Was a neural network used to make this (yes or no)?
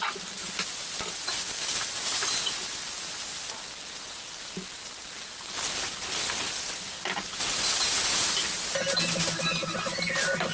no